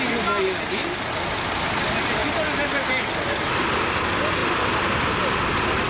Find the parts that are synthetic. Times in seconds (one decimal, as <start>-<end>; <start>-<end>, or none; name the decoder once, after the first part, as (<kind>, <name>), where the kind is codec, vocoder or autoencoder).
none